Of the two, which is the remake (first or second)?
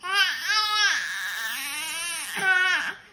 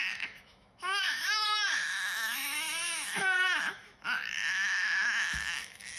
second